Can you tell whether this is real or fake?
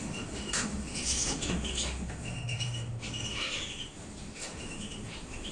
fake